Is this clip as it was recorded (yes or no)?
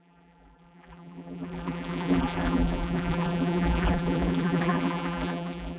no